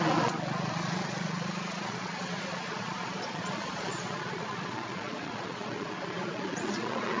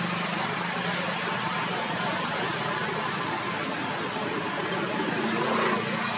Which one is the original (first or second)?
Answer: second